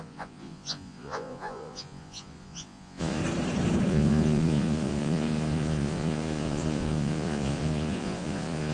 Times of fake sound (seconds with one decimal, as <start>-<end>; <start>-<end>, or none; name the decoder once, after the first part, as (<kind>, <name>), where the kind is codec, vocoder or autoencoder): 0.0-3.2 (vocoder, Vocos); 3.9-8.7